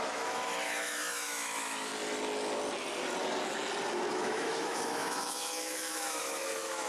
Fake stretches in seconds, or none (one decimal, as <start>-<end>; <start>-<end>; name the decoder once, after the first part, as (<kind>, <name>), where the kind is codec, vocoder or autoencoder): 0.0-1.9 (autoencoder, DAC-VAE); 4.1-6.9